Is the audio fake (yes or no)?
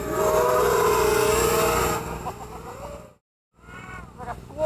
no